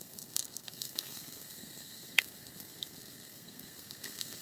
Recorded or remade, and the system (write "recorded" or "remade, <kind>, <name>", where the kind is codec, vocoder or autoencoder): remade, codec, SNAC